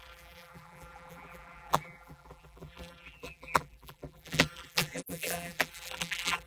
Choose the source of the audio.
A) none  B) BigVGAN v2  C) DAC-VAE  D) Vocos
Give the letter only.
B